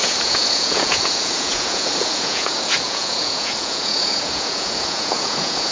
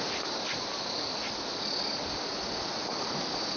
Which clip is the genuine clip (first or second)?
second